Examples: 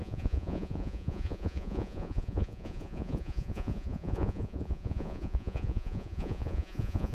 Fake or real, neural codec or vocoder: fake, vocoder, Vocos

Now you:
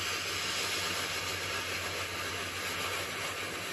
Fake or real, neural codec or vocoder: real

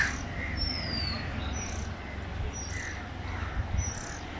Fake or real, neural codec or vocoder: real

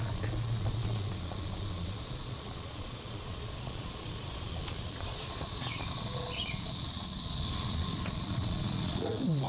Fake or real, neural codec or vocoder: fake, vocoder, Vocos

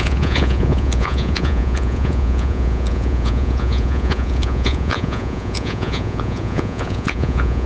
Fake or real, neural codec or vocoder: fake, vocoder, Vocos